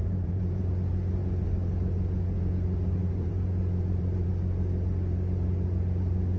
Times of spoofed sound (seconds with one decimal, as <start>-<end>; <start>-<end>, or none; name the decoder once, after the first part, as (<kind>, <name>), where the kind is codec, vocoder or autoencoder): 0.0-0.7 (vocoder, BigVGAN v2); 3.0-4.3